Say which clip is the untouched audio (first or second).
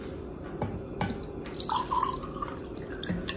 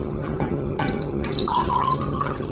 first